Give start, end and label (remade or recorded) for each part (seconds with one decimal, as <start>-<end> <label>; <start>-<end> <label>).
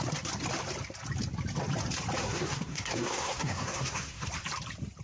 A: 0.0-2.2 recorded; 2.2-4.3 remade; 4.3-5.0 recorded